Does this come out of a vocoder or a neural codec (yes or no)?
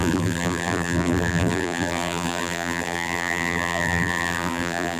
yes